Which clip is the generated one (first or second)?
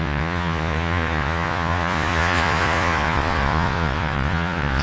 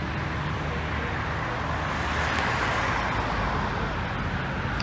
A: first